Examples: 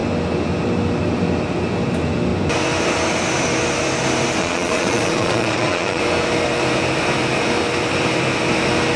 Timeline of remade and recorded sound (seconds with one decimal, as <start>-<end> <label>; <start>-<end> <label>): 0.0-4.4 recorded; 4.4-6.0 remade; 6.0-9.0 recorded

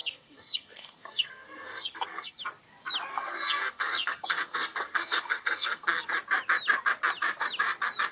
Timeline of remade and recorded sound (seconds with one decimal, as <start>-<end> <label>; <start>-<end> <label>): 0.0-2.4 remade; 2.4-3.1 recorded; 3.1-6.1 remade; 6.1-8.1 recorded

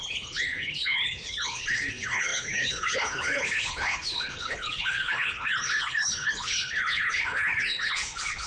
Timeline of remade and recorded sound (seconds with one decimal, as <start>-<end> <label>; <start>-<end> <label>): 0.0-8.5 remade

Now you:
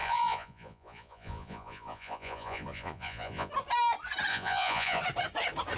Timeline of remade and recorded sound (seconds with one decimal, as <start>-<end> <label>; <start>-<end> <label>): 0.0-3.5 remade; 3.5-4.3 recorded; 4.3-5.0 remade; 5.0-5.8 recorded

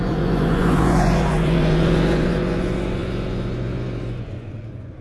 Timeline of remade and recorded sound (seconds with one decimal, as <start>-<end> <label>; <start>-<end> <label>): 0.0-5.0 remade

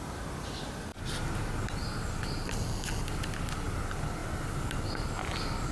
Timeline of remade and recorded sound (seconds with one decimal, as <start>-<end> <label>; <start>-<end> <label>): 0.0-5.7 recorded

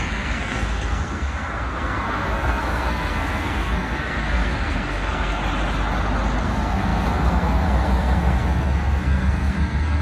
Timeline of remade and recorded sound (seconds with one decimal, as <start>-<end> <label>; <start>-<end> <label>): 0.0-5.4 remade; 5.4-6.4 recorded; 6.4-10.0 remade

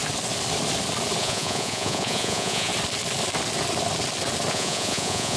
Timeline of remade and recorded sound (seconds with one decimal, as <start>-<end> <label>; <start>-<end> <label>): 0.0-1.2 recorded; 1.2-2.7 remade; 2.7-4.5 recorded; 4.5-5.4 remade